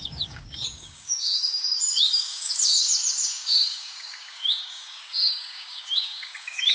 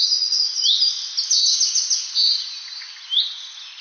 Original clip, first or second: second